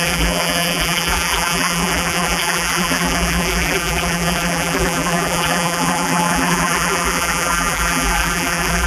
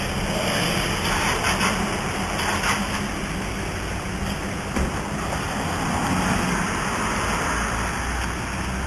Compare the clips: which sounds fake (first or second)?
first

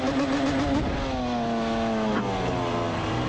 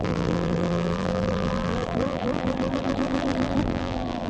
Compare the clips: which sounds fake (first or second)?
second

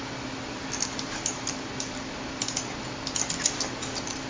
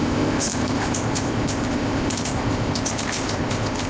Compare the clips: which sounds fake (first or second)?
second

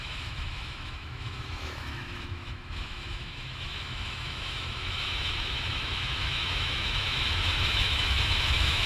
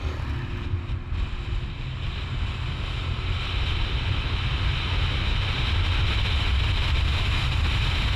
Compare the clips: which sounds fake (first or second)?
first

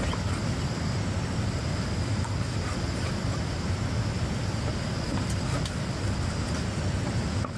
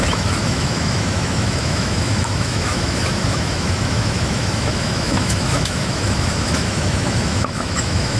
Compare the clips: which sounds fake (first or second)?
second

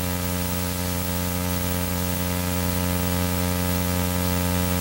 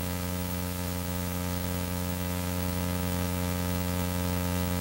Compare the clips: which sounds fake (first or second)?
second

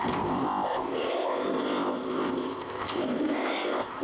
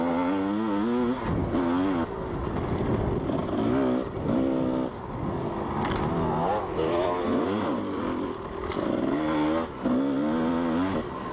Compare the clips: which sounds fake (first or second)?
first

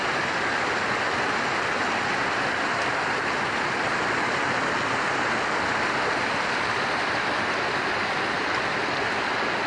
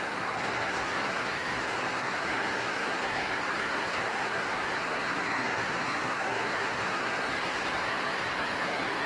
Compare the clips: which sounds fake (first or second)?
second